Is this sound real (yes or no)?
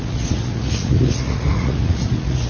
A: no